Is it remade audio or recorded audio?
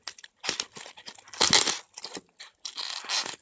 recorded